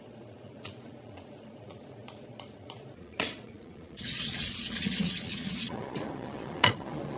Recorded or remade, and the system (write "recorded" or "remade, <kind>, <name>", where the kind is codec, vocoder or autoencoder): remade, vocoder, Vocos